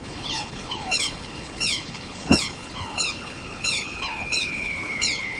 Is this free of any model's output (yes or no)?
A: no